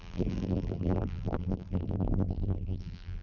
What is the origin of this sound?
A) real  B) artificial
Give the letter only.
B